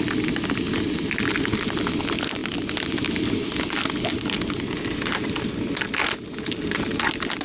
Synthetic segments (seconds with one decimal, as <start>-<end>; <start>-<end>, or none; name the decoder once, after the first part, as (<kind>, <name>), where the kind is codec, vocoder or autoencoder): 2.4-3.0 (vocoder, BigVGAN v2)